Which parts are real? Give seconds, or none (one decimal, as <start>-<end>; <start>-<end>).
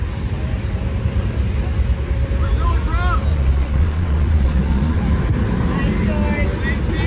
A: 0.0-3.3; 5.0-7.1